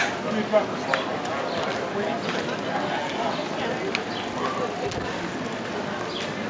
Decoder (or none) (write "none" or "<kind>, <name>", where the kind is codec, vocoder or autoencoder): none